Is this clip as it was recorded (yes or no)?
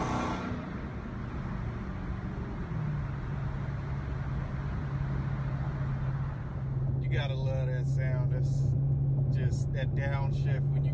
yes